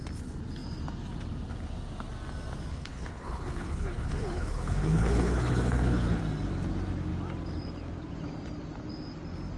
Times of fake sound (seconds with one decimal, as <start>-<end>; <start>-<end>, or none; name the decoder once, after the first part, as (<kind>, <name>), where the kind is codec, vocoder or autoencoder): 2.7-6.2 (codec, HILCodec)